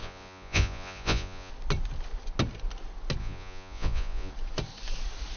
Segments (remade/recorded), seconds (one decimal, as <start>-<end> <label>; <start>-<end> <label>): 0.0-1.5 remade; 1.5-3.2 recorded; 3.2-4.3 remade; 4.3-5.4 recorded